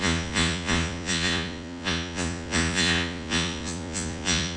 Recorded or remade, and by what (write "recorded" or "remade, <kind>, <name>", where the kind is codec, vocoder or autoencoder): remade, vocoder, Vocos